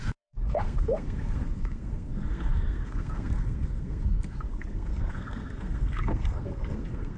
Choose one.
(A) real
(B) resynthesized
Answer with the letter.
B